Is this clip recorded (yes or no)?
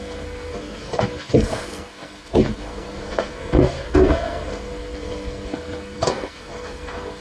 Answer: no